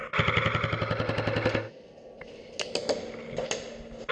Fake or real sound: real